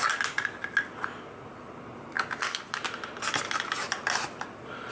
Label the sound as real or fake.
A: real